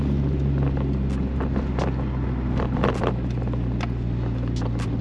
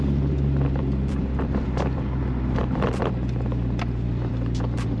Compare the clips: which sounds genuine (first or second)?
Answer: first